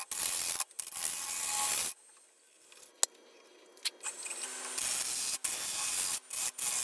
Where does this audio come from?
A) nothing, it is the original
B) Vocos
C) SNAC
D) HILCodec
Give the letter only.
A